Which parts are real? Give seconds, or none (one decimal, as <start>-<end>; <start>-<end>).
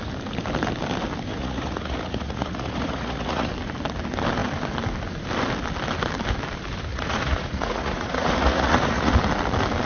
0.0-1.3; 3.5-6.9; 9.1-9.9